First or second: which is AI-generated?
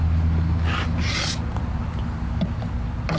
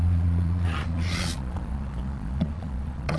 second